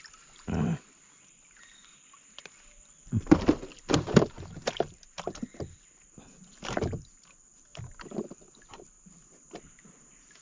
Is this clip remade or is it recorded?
remade